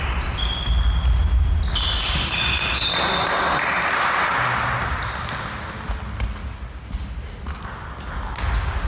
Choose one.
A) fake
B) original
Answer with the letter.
B